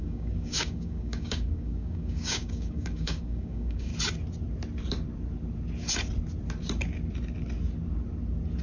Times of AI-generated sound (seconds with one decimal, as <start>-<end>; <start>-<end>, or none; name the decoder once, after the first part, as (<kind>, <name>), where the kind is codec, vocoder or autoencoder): 0.0-3.9 (codec, DAC)